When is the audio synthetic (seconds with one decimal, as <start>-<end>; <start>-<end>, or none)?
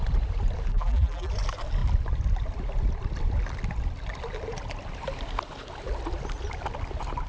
0.7-1.3